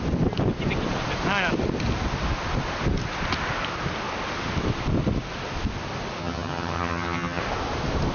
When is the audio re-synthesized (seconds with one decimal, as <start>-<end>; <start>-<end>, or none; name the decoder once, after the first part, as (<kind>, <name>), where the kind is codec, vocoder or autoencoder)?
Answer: 6.2-7.4 (vocoder, HiFi-GAN)